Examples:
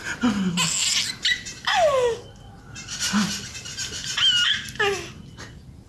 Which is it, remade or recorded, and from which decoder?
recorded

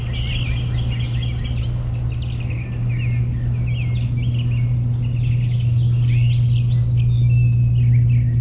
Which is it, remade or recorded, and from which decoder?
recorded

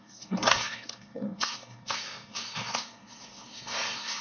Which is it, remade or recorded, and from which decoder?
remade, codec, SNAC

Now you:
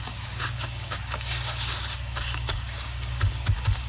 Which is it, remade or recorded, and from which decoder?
remade, codec, DAC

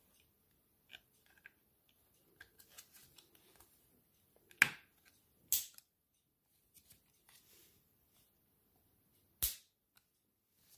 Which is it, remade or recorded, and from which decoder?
recorded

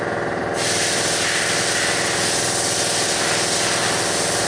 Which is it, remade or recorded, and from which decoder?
recorded